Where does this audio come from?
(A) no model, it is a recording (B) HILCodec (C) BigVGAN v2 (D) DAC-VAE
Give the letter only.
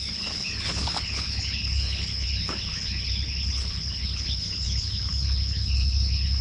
B